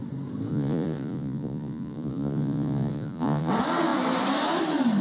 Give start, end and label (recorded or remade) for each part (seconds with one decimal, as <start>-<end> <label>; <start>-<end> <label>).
0.0-0.5 recorded; 0.5-3.5 remade; 3.5-5.0 recorded

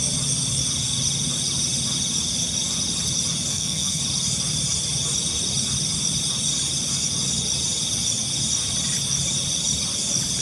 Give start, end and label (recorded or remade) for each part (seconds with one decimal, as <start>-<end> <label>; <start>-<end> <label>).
0.0-3.5 recorded; 3.5-4.0 remade; 4.0-10.4 recorded